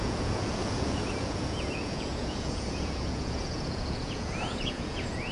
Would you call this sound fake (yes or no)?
yes